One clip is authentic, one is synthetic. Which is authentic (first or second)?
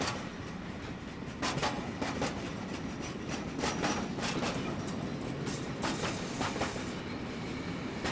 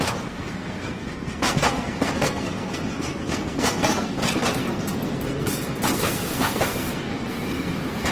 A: first